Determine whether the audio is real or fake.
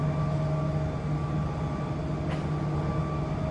real